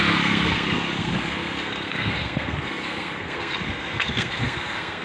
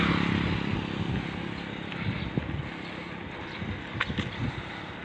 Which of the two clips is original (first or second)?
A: second